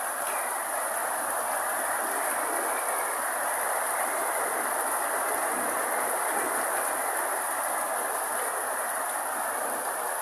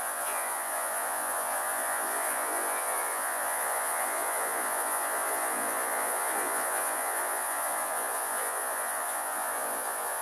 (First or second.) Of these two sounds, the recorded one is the first